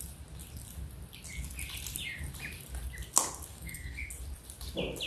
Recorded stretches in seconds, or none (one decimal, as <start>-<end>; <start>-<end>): 0.0-3.5; 4.1-5.1